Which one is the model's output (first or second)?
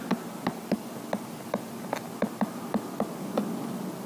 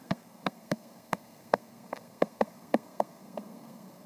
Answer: second